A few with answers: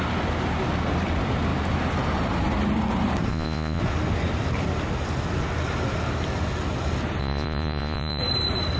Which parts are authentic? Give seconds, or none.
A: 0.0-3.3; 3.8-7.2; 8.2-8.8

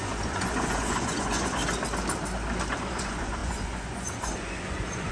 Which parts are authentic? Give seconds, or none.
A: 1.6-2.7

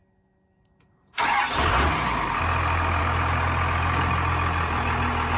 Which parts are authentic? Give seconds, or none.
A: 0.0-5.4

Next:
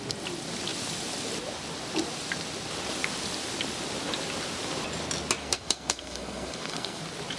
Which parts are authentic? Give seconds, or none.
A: 0.0-5.4; 7.0-7.4